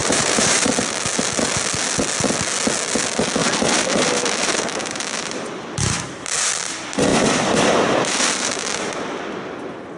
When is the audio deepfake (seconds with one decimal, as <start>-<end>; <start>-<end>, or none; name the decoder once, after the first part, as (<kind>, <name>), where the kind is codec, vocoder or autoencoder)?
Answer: 0.0-0.7 (vocoder, BigVGAN v2); 3.4-4.8; 7.1-8.9